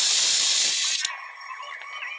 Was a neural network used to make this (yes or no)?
no